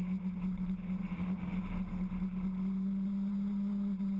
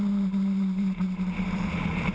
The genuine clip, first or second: first